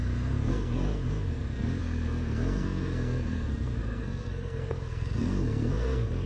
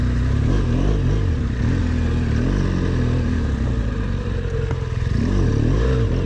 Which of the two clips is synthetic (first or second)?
first